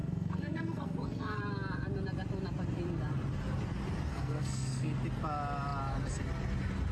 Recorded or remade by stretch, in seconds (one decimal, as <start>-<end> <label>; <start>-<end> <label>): 0.0-1.4 remade; 1.4-4.1 recorded; 4.1-4.9 remade; 4.9-6.9 recorded